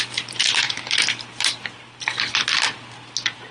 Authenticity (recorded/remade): recorded